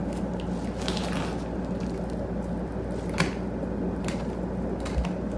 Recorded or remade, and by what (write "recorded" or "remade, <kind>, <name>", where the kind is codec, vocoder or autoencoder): recorded